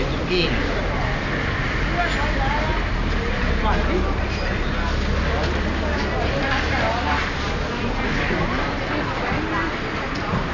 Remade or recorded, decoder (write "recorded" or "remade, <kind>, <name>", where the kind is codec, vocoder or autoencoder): recorded